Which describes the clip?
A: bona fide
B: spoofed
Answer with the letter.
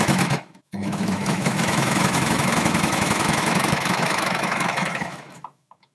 B